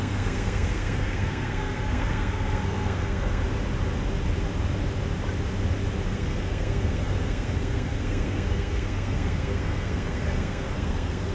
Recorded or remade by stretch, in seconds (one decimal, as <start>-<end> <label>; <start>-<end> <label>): 0.0-3.4 remade; 3.4-6.1 recorded; 6.1-11.3 remade